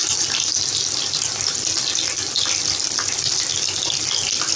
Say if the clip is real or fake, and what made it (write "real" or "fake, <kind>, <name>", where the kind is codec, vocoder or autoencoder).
real